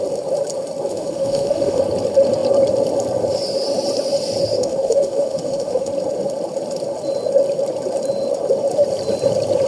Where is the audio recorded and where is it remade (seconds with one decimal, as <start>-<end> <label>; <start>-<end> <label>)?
0.0-0.9 recorded; 0.9-1.8 remade; 1.8-4.6 recorded; 4.6-5.9 remade; 5.9-9.7 recorded